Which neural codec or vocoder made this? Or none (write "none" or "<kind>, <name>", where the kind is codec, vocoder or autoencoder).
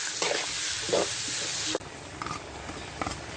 none